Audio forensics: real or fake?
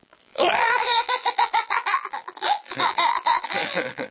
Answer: fake